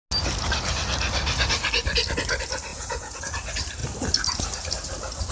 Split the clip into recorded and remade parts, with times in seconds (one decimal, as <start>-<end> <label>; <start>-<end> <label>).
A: 0.0-2.7 recorded; 2.7-3.2 remade; 3.2-5.3 recorded